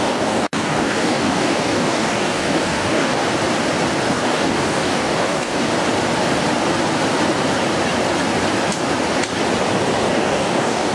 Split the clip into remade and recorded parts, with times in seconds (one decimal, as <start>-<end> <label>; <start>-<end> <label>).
0.0-3.2 remade; 3.2-4.1 recorded; 4.1-5.7 remade; 5.7-10.1 recorded; 10.1-10.9 remade

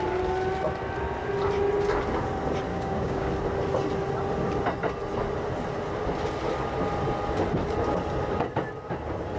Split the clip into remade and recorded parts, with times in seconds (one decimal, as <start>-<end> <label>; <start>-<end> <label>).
0.0-2.7 recorded; 2.7-3.3 remade; 3.3-9.4 recorded

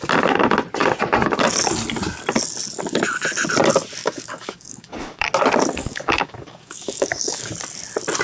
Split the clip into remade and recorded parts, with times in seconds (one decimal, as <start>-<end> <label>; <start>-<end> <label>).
0.0-4.0 recorded; 4.0-5.3 remade; 5.3-5.8 recorded; 5.8-7.5 remade; 7.5-8.2 recorded

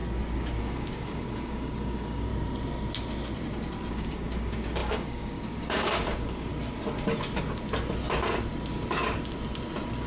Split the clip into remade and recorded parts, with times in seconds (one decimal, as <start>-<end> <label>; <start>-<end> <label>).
0.0-0.6 recorded; 0.6-2.3 remade; 2.3-3.9 recorded; 3.9-6.5 remade; 6.5-10.1 recorded

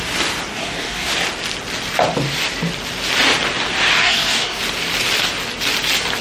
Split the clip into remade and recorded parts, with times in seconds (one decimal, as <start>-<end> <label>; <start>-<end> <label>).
0.0-0.5 recorded; 0.5-1.1 remade; 1.1-4.0 recorded; 4.0-4.6 remade; 4.6-6.2 recorded